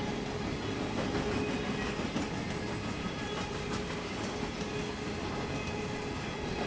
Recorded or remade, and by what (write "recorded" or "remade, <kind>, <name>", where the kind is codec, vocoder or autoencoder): recorded